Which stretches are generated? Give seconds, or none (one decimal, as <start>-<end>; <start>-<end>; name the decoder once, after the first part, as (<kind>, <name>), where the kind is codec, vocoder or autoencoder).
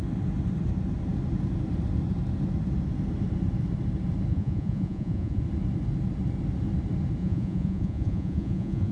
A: 4.3-5.4 (vocoder, Vocos); 7.2-8.9